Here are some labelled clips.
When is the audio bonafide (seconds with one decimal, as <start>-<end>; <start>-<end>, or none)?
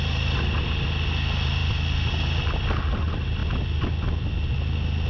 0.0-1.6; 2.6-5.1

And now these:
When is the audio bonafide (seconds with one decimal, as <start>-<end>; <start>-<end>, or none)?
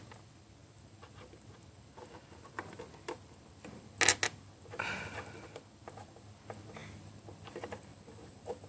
0.0-8.7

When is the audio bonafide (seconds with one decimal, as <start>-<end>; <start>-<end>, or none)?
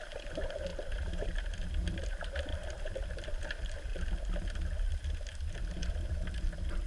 0.7-1.7; 3.9-5.9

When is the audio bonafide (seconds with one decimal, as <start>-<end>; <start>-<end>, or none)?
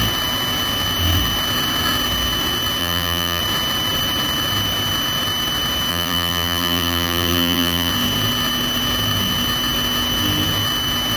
0.0-2.8; 3.4-5.9; 7.9-11.2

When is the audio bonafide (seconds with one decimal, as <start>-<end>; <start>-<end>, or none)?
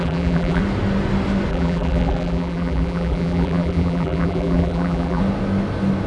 0.6-1.5; 5.2-6.1